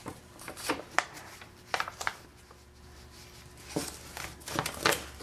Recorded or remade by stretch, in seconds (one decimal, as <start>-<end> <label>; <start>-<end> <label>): 0.0-2.1 remade; 2.1-2.8 recorded; 2.8-3.2 remade; 3.2-5.2 recorded